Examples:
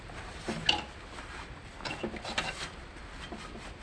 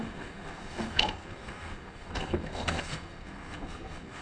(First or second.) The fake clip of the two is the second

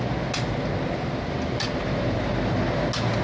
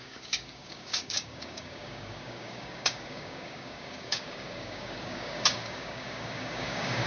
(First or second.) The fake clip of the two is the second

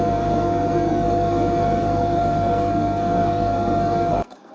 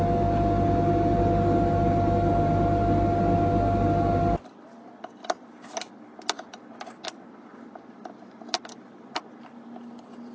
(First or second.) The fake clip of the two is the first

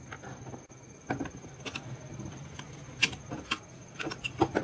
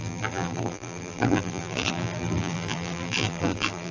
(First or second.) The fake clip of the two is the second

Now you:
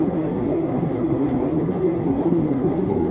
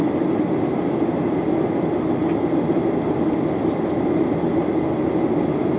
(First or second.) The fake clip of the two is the first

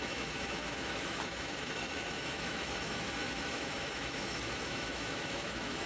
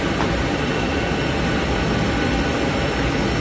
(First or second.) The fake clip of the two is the first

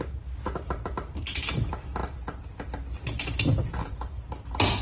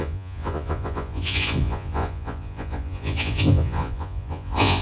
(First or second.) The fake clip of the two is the second